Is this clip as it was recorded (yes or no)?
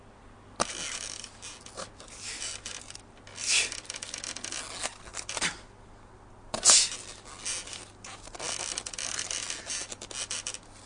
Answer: yes